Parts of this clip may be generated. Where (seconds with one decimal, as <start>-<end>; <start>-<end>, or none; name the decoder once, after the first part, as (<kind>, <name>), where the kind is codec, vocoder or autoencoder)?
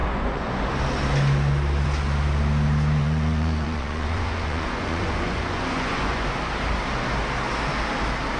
0.0-0.5 (vocoder, Vocos); 3.0-6.3